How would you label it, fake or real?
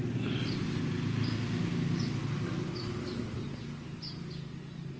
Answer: real